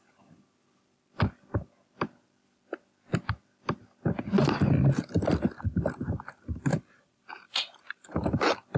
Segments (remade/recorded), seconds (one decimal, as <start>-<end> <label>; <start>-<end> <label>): 0.0-6.7 recorded; 6.7-8.4 remade; 8.4-8.8 recorded